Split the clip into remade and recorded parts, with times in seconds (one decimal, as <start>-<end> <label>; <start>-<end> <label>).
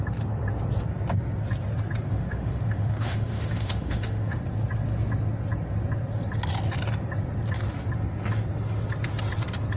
0.0-2.1 recorded; 2.1-4.4 remade; 4.4-9.8 recorded